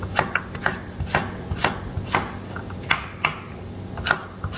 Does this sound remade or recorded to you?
recorded